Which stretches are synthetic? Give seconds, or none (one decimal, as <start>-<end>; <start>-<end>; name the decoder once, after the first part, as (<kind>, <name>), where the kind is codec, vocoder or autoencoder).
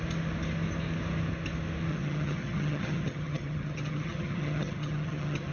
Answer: 1.9-5.5 (vocoder, HiFi-GAN)